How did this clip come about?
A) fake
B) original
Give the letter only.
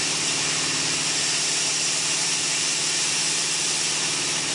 B